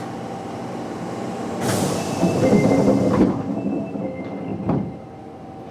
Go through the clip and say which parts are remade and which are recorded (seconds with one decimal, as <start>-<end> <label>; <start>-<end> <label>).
0.0-5.7 recorded